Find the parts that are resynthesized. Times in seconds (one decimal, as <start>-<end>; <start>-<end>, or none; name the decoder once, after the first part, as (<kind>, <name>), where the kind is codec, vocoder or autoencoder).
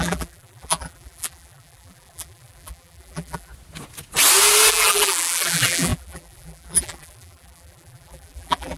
0.0-3.5 (vocoder, BigVGAN v2); 4.7-8.8